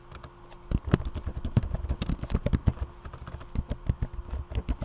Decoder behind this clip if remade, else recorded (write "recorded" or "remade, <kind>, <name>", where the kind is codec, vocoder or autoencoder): recorded